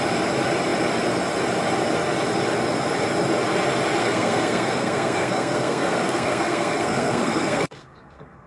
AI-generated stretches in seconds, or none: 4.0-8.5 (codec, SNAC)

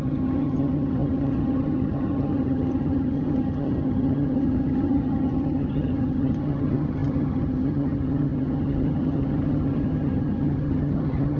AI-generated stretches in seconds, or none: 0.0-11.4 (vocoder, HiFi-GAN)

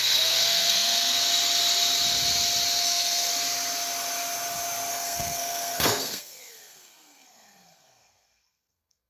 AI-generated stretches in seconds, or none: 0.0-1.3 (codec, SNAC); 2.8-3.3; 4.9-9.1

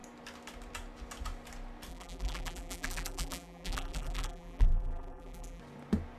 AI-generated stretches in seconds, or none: 1.9-5.6 (vocoder, BigVGAN v2)

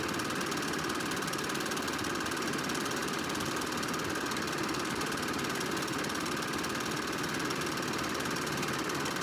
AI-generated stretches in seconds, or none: 3.0-3.6 (vocoder, BigVGAN v2)